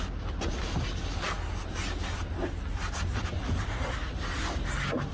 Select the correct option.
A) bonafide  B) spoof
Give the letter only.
A